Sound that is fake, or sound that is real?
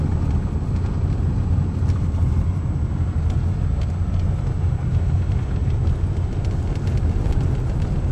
real